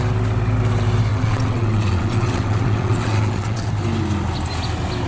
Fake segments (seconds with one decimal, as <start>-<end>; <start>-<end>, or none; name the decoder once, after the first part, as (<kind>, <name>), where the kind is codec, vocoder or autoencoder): 1.1-3.7 (vocoder, WaveNeXt)